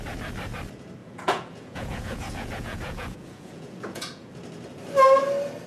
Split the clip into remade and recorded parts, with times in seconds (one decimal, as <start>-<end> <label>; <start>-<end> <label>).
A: 0.0-1.0 recorded; 1.0-4.3 remade; 4.3-5.7 recorded